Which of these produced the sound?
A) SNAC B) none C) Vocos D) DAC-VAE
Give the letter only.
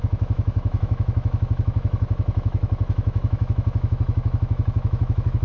D